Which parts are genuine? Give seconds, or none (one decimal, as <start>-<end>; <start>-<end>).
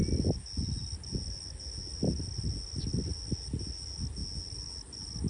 0.0-5.3